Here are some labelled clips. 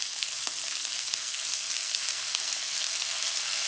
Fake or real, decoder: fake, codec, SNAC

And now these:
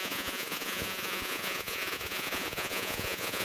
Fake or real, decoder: fake, vocoder, Vocos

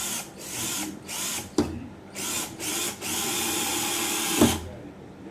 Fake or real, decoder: real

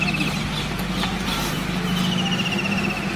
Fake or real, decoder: real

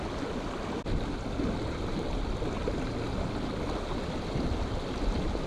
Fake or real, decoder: real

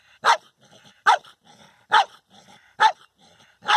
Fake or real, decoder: real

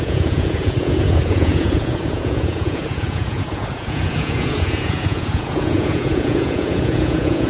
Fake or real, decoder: fake, vocoder, Vocos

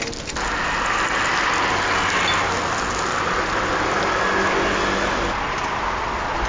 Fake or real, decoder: real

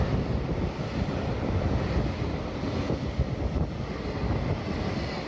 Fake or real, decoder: real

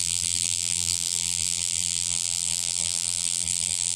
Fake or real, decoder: fake, vocoder, BigVGAN v2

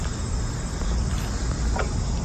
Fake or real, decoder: real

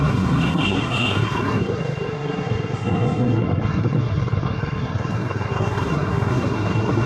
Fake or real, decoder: fake, codec, SNAC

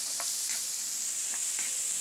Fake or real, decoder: real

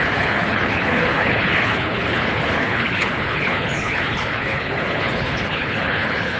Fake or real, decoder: fake, codec, HILCodec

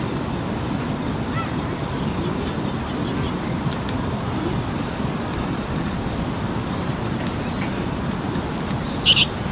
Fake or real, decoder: real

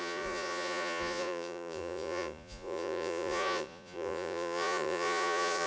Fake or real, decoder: fake, vocoder, Vocos